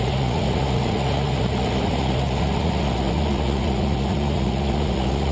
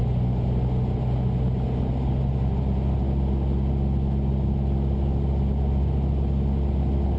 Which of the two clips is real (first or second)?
second